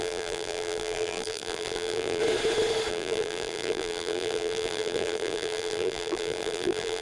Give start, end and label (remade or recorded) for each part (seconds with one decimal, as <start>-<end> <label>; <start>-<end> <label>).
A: 0.0-2.2 remade; 2.2-2.9 recorded; 2.9-7.0 remade